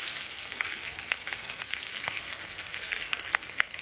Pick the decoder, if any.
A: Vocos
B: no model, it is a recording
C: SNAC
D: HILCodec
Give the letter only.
C